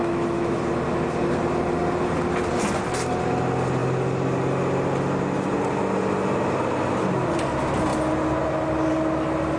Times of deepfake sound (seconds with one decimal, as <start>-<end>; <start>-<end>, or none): 0.0-0.7